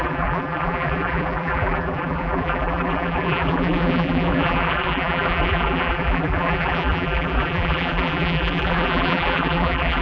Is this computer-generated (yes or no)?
yes